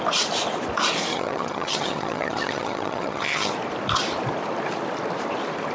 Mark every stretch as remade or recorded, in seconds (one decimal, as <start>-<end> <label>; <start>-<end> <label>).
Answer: 0.0-1.1 recorded; 1.1-3.5 remade; 3.5-5.7 recorded